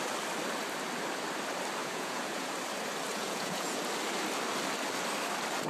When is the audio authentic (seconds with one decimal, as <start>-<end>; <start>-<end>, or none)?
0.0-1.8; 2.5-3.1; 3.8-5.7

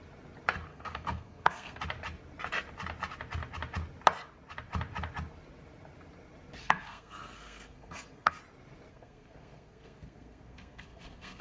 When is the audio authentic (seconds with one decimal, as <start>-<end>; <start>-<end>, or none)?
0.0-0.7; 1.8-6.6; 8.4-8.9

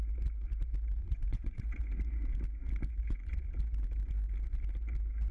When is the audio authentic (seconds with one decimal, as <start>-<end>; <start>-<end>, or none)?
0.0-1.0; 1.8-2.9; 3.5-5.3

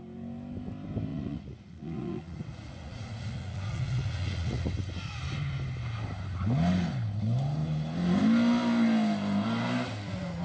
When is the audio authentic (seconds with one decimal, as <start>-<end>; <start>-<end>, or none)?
0.0-1.1; 4.7-10.4